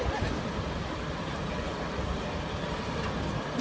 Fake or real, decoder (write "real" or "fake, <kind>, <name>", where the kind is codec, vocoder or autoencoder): real